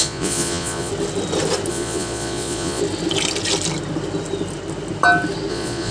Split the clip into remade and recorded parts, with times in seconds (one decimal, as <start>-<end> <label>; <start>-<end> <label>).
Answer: 0.0-0.9 remade; 0.9-1.7 recorded; 1.7-2.8 remade; 2.8-5.5 recorded; 5.5-5.9 remade